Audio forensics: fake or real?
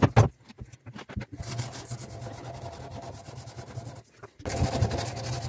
real